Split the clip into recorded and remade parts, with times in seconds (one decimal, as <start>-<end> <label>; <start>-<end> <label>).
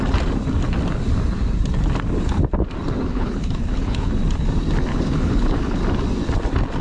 0.0-3.1 recorded; 3.1-4.1 remade; 4.1-4.9 recorded; 4.9-5.8 remade; 5.8-6.8 recorded